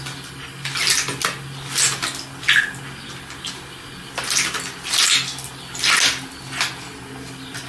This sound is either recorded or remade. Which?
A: recorded